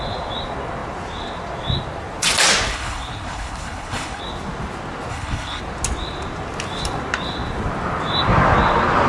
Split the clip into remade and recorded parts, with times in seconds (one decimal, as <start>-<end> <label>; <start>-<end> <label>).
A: 0.0-2.7 recorded; 2.7-4.2 remade; 4.2-5.1 recorded; 5.1-5.6 remade; 5.6-9.1 recorded

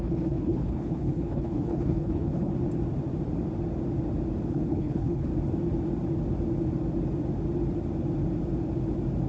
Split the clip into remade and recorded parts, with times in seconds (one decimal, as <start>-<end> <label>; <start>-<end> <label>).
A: 0.0-2.5 remade; 2.5-4.5 recorded; 4.5-5.3 remade; 5.3-9.3 recorded

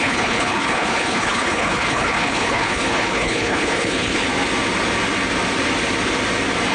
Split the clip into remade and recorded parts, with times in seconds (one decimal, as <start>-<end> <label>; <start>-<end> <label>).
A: 0.0-4.3 remade; 4.3-6.7 recorded

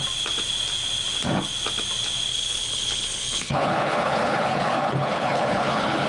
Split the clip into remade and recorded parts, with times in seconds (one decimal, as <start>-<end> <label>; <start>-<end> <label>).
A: 0.0-2.3 recorded; 2.3-6.1 remade